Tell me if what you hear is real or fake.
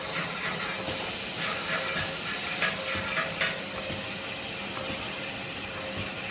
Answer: real